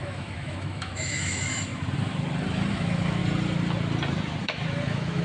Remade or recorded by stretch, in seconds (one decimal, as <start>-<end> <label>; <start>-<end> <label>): 0.0-1.7 remade; 1.7-2.7 recorded; 2.7-3.2 remade; 3.2-4.4 recorded; 4.4-5.2 remade